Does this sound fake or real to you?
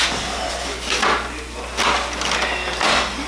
real